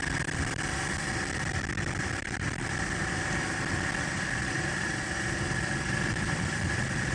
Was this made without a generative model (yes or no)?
no